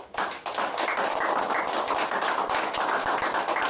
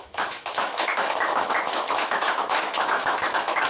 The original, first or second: first